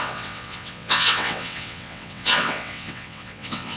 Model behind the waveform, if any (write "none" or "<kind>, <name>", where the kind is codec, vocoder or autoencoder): vocoder, WaveNeXt